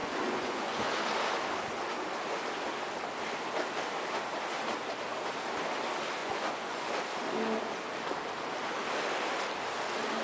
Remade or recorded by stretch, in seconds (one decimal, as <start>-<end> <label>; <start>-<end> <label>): 0.0-0.8 remade; 0.8-6.2 recorded; 6.2-6.9 remade; 6.9-10.2 recorded